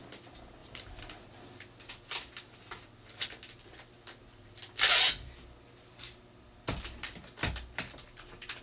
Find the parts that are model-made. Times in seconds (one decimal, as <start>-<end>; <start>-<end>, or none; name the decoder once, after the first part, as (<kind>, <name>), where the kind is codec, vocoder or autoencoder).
none